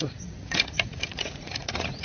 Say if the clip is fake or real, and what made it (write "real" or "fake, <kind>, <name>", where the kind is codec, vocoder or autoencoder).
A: fake, vocoder, Vocos